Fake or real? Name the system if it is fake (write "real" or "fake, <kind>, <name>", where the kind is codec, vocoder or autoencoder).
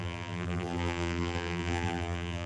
fake, vocoder, BigVGAN v2